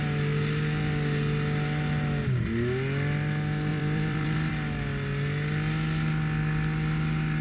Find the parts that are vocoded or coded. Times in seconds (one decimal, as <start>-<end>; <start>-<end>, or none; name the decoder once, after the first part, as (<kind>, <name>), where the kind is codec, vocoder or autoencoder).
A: 3.7-4.5 (vocoder, BigVGAN v2)